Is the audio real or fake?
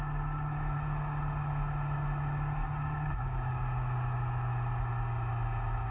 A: real